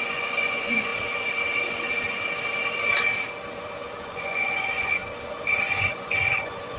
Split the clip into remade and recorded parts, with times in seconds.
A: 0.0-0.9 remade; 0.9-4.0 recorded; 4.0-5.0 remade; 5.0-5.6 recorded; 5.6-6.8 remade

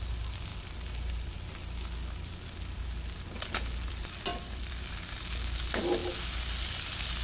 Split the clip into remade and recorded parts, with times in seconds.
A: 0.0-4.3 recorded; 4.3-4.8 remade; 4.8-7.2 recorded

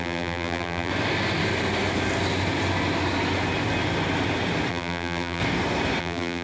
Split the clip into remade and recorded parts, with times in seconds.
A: 0.0-0.9 remade; 0.9-4.7 recorded; 4.7-5.4 remade; 5.4-6.0 recorded; 6.0-6.4 remade

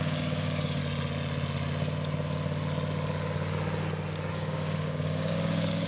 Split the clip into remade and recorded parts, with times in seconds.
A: 0.0-0.8 remade; 0.8-4.3 recorded; 4.3-5.9 remade